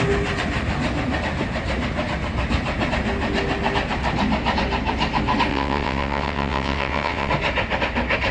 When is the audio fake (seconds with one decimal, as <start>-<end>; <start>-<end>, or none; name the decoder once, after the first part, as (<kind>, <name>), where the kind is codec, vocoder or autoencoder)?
5.5-7.3 (vocoder, WaveNeXt)